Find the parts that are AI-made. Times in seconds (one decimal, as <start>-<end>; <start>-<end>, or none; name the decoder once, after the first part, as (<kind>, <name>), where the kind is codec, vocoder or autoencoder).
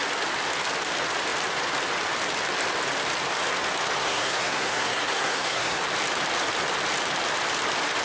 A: 4.0-5.8 (codec, SNAC)